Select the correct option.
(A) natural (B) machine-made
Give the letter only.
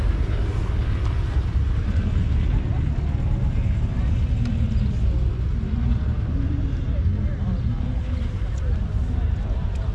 A